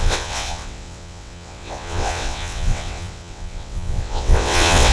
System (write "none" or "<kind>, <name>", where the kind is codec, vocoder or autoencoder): vocoder, WaveNeXt